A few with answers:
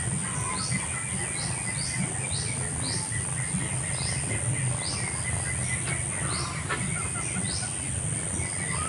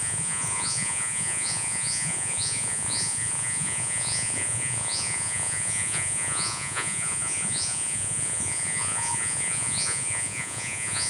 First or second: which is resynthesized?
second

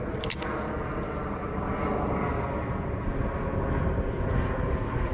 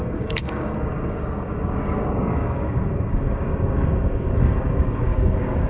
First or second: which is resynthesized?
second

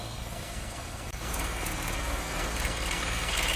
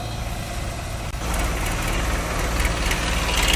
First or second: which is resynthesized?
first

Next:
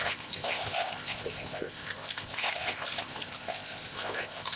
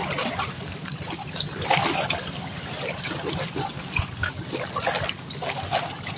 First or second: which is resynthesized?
first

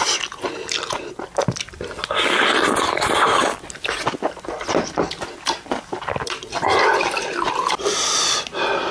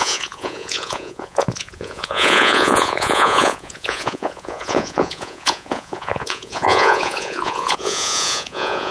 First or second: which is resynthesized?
second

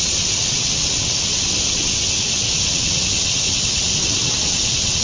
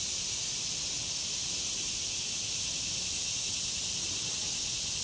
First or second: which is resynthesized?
first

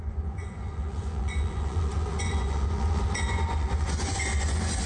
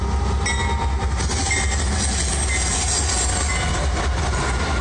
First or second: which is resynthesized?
first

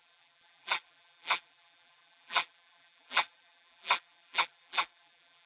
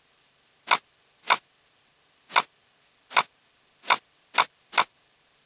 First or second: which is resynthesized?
first